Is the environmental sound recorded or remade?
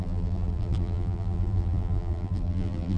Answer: remade